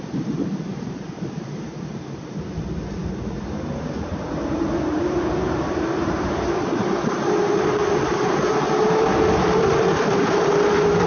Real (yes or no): no